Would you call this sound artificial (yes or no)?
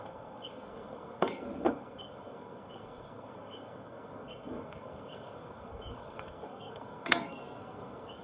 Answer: yes